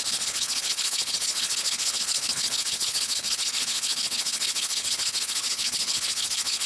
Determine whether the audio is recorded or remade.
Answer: remade